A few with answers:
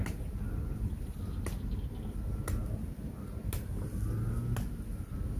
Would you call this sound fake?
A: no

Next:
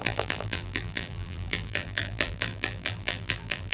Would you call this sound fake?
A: yes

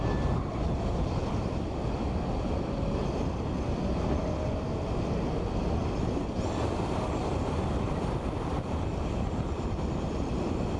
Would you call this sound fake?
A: no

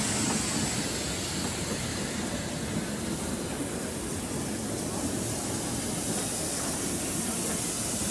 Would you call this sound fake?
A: no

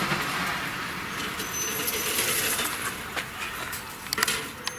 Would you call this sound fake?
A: no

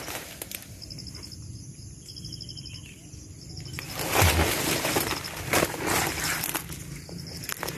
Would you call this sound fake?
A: no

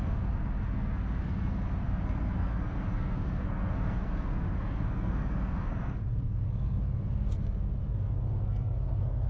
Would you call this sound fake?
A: yes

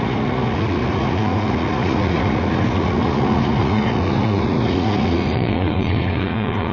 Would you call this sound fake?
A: yes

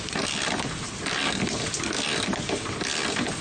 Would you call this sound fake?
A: no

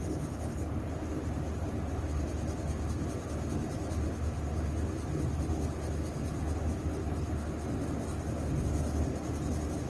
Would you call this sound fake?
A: no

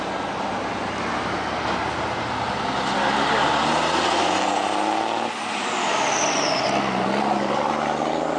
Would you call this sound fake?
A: no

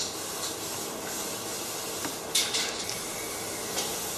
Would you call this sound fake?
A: no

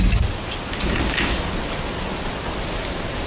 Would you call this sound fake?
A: no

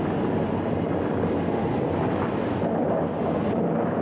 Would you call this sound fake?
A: no